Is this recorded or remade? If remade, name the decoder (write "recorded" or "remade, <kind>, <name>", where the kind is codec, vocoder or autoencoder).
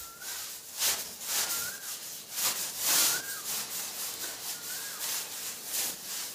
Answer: recorded